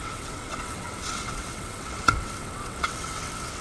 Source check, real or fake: fake